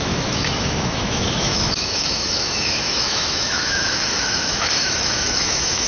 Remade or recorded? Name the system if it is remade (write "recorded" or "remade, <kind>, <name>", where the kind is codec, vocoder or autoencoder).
remade, autoencoder, DAC-VAE